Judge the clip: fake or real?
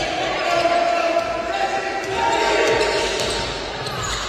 real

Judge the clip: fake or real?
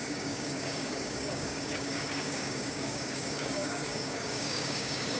fake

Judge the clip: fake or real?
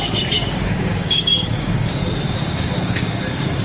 fake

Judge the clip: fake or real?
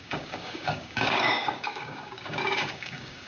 fake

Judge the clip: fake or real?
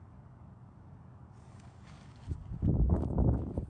fake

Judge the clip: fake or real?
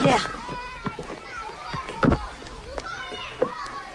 real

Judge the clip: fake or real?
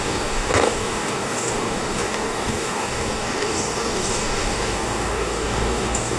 fake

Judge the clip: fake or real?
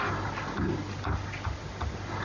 real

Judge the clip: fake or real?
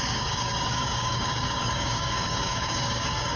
fake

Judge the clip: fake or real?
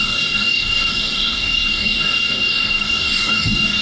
fake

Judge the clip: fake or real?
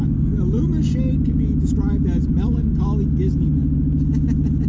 real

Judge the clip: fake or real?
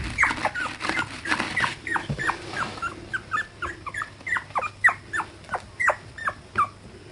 real